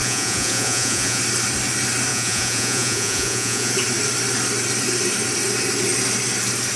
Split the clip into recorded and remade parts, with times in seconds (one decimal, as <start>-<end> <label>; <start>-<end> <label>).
0.0-1.2 remade; 1.2-2.1 recorded; 2.1-3.7 remade; 3.7-6.8 recorded